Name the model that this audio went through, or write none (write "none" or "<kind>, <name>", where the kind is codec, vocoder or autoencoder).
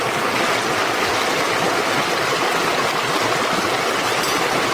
none